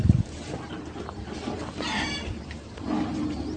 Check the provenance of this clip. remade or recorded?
remade